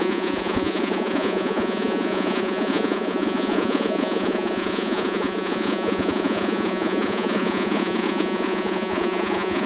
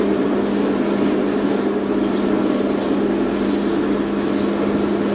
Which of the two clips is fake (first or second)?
first